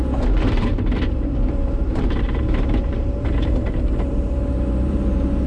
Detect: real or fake fake